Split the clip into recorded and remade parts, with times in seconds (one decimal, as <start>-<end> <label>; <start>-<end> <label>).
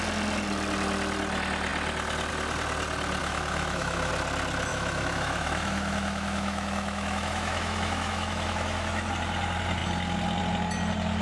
0.0-3.2 recorded; 3.2-4.1 remade; 4.1-4.7 recorded; 4.7-9.1 remade; 9.1-11.2 recorded